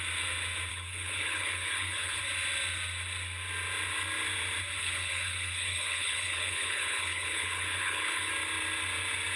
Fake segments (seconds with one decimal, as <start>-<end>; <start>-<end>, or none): 0.7-2.2; 4.8-8.3